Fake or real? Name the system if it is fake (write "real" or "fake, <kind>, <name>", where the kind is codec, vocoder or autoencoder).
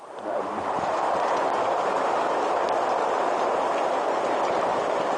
real